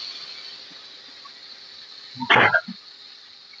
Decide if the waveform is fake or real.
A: real